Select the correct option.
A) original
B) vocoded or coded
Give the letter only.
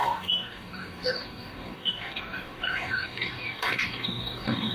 B